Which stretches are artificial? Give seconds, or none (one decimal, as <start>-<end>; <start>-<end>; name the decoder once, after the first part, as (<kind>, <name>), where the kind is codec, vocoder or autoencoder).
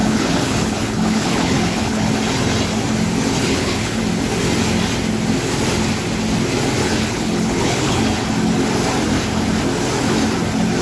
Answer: 0.0-2.1 (codec, HILCodec); 3.4-4.0; 6.8-8.0